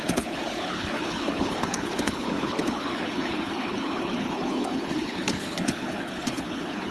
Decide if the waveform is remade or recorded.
remade